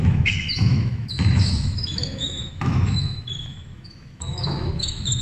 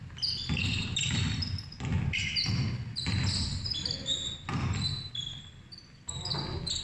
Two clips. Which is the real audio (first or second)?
second